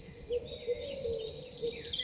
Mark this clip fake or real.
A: real